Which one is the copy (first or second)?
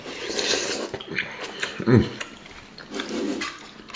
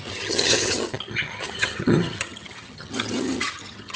second